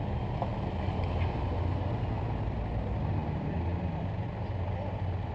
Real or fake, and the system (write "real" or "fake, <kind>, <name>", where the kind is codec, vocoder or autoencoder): real